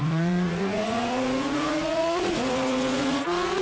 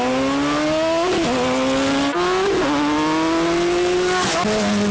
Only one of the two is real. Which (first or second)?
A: second